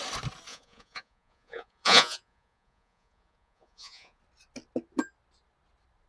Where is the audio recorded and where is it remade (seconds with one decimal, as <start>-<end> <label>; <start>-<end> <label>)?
0.0-0.5 recorded; 0.5-4.2 remade; 4.2-6.1 recorded